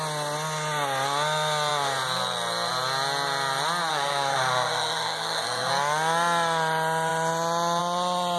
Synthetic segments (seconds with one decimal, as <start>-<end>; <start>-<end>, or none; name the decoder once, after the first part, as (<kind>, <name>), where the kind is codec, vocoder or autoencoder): 3.9-5.7 (codec, SNAC)